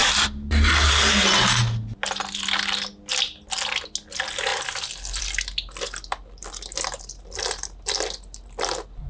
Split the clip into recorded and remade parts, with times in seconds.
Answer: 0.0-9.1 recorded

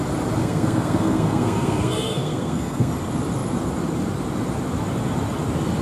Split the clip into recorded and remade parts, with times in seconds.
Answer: 0.0-0.4 recorded; 0.4-2.9 remade; 2.9-5.8 recorded

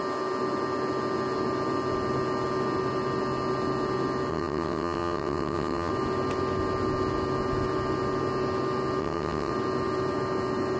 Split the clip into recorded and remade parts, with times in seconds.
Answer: 0.0-4.3 recorded; 4.3-5.9 remade; 5.9-9.0 recorded; 9.0-9.5 remade; 9.5-10.8 recorded

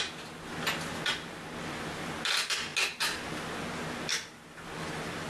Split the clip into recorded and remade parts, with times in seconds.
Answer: 0.0-5.3 recorded

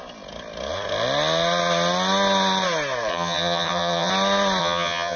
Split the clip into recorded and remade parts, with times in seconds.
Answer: 0.0-3.1 recorded; 3.1-4.1 remade; 4.1-4.6 recorded; 4.6-5.2 remade

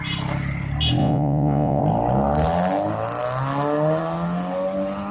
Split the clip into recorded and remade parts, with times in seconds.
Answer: 0.0-1.0 recorded; 1.0-1.8 remade; 1.8-5.1 recorded

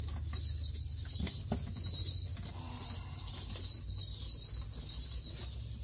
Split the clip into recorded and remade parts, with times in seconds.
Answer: 0.0-5.8 recorded

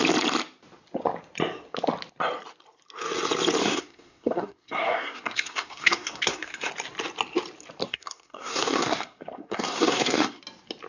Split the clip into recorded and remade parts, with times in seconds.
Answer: 0.0-3.6 recorded; 3.6-6.7 remade; 6.7-7.8 recorded; 7.8-10.4 remade; 10.4-10.9 recorded